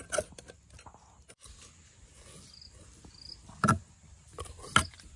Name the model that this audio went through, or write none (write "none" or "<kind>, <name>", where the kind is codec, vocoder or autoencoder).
none